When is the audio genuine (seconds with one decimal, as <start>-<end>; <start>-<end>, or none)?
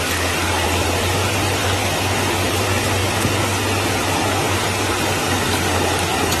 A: 0.0-6.4